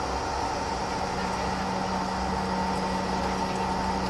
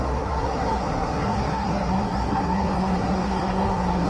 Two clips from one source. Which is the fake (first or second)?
second